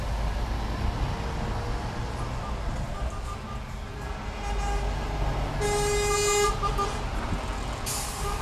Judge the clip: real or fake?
real